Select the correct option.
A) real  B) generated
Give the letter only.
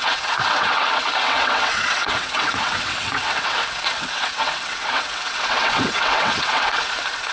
B